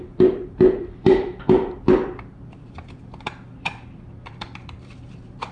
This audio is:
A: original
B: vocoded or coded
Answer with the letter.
B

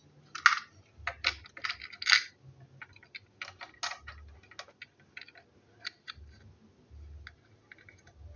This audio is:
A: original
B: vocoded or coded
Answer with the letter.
A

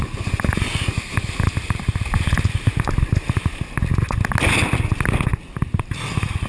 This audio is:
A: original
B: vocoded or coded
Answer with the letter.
A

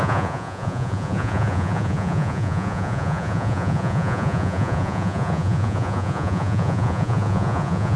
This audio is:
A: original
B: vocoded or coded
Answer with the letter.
B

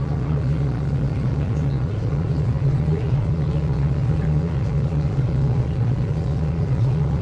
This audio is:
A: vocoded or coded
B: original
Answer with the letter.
A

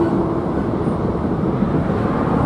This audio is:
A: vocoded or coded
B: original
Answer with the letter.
B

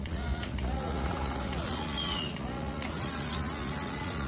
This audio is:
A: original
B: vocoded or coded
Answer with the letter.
B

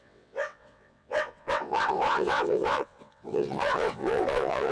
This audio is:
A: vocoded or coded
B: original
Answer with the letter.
A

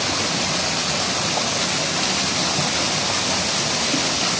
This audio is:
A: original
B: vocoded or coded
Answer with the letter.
A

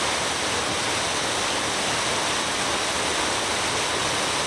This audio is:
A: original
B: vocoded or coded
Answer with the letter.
A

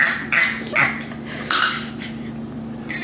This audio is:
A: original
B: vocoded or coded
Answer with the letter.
A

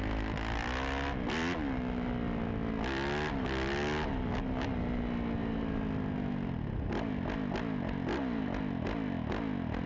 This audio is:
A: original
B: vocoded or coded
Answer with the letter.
A